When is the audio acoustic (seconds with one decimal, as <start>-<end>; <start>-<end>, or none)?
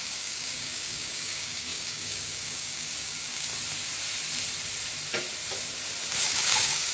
3.5-6.2